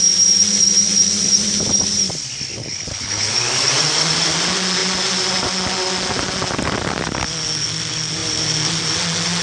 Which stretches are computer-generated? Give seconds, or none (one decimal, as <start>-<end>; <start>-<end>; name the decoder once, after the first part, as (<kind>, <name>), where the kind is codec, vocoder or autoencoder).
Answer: 2.5-3.3 (codec, HILCodec)